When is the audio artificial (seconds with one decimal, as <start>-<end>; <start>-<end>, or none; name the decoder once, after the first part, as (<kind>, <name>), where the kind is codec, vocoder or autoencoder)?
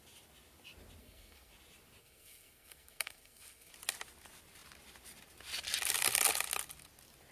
1.0-1.5 (codec, SNAC); 2.0-3.7